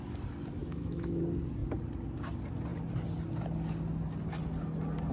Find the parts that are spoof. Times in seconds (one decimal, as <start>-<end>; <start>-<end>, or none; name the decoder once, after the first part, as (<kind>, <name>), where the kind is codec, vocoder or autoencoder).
0.6-1.2 (autoencoder, DAC-VAE)